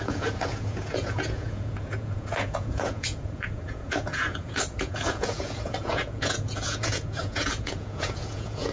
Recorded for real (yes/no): no